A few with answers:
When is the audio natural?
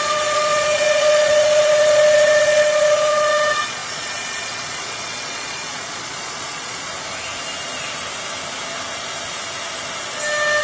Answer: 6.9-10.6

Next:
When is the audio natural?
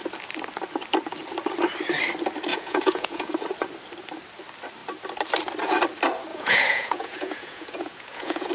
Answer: 0.0-2.5; 3.3-6.3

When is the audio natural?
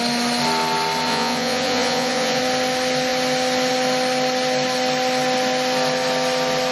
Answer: 0.0-1.1; 2.4-6.7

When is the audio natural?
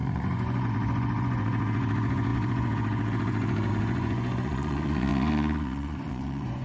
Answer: none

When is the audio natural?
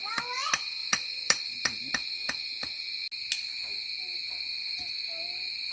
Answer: 0.0-0.8; 1.8-5.7